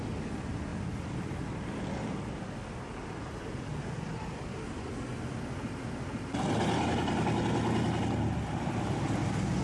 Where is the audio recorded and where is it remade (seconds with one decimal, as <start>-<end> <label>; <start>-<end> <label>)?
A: 0.0-9.6 recorded